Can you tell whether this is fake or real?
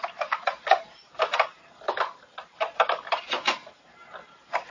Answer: real